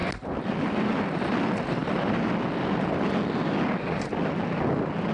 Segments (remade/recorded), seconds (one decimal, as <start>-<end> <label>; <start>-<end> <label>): 0.0-5.1 recorded